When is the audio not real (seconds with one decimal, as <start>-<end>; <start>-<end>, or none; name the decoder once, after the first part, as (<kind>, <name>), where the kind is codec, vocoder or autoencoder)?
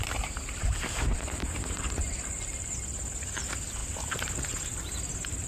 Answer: 0.0-5.5 (vocoder, BigVGAN v2)